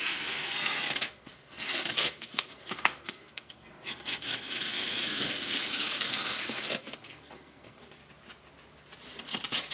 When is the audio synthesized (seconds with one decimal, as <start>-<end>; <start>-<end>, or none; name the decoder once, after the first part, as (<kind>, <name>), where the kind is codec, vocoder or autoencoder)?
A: 0.0-8.0 (codec, SNAC)